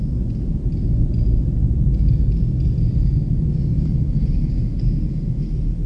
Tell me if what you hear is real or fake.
real